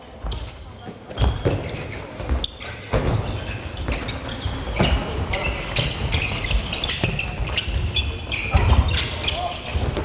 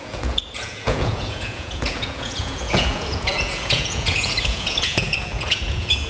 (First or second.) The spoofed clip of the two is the second